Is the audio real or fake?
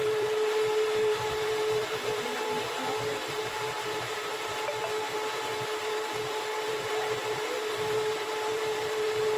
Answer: fake